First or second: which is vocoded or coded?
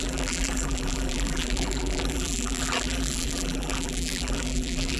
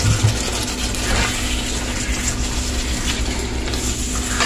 first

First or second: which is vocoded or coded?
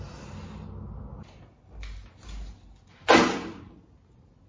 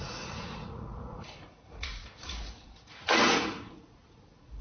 second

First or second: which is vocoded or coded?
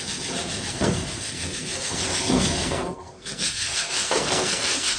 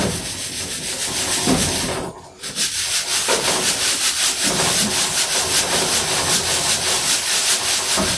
first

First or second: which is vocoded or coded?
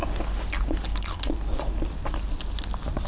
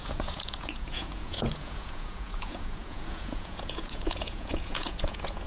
second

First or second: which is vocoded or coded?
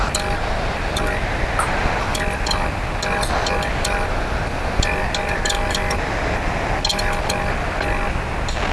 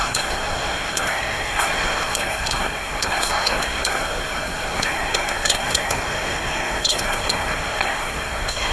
second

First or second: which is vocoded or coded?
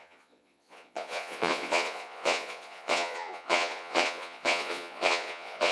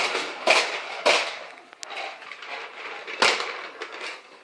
first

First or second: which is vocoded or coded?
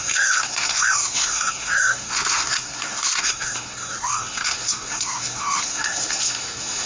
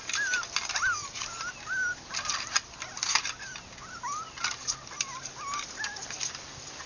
first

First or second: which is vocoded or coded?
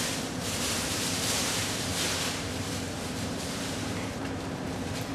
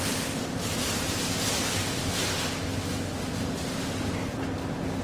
first